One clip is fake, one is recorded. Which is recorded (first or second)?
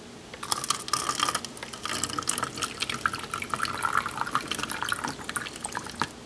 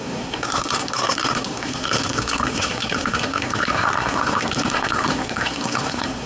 first